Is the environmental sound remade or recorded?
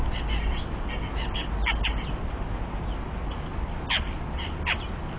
recorded